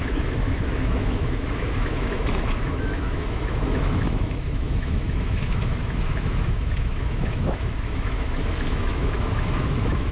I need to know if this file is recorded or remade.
remade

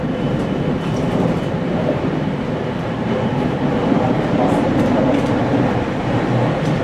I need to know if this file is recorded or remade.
remade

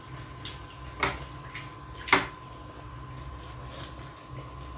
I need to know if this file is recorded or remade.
recorded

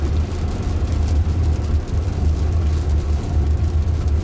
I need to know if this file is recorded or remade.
recorded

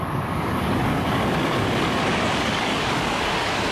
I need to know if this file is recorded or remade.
remade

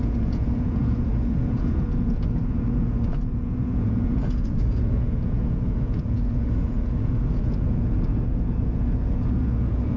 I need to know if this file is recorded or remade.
remade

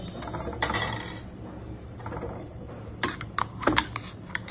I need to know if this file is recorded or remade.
recorded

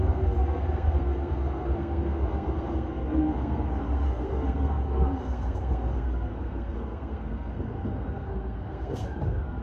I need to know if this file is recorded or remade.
remade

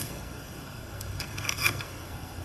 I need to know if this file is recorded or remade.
remade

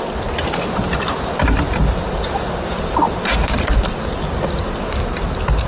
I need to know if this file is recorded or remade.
recorded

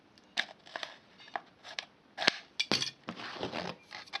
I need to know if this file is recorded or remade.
recorded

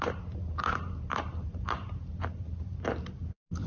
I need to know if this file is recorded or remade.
remade